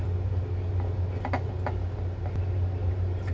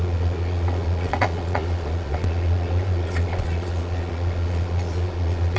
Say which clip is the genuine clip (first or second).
first